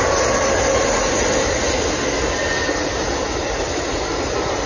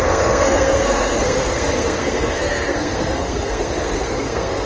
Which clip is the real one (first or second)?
first